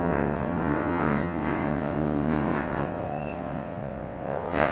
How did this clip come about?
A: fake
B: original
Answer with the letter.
A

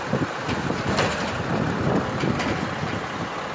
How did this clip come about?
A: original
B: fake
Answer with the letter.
A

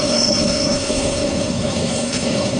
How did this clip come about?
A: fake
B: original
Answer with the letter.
A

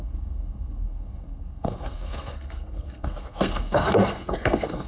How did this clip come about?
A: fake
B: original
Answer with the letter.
A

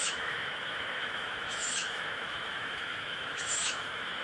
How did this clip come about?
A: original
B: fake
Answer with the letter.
B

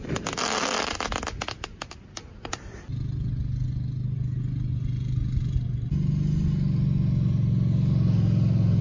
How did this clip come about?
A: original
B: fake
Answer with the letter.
A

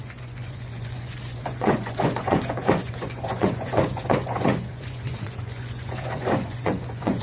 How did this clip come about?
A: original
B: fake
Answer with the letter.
B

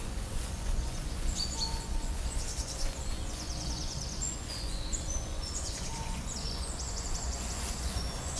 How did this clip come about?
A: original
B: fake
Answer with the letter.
B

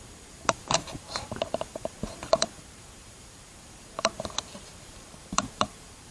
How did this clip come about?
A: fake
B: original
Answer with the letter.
A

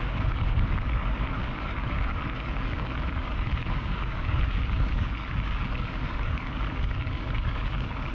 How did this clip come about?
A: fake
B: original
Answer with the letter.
A